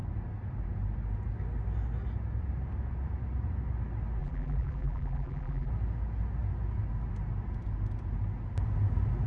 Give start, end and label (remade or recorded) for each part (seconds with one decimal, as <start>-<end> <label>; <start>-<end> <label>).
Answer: 0.0-4.2 recorded; 4.2-5.7 remade; 5.7-9.3 recorded